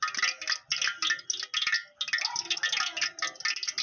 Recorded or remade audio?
recorded